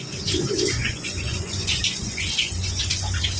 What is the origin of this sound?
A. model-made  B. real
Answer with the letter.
A